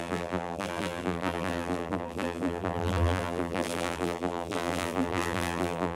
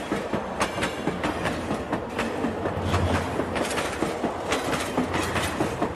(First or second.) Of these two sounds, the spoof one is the first